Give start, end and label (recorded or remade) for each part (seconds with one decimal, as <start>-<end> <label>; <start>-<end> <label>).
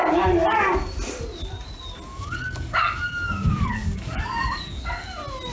0.0-2.1 recorded; 2.1-5.1 remade; 5.1-5.5 recorded